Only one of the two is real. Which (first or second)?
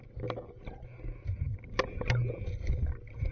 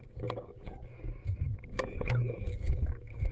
first